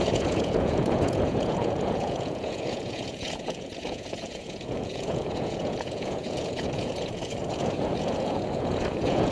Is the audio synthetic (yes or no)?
yes